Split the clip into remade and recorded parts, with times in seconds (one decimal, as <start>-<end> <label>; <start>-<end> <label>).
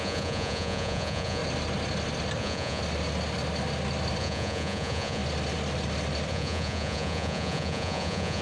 0.0-1.4 remade; 1.4-2.4 recorded; 2.4-2.8 remade; 2.8-4.2 recorded; 4.2-5.2 remade; 5.2-6.3 recorded; 6.3-8.4 remade